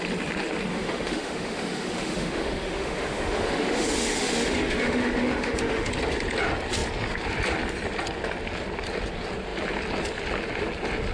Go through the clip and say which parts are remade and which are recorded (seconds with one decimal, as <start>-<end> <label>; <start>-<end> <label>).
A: 0.0-0.7 recorded; 0.7-5.9 remade; 5.9-11.1 recorded